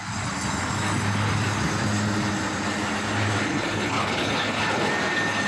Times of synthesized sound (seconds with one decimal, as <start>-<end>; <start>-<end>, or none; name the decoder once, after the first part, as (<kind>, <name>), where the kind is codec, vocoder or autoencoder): 3.5-4.9 (codec, HILCodec)